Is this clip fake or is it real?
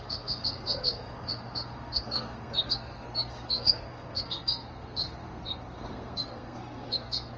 fake